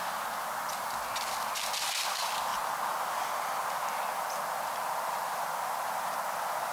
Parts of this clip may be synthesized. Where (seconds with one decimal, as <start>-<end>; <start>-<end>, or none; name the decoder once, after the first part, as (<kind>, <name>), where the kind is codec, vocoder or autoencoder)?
none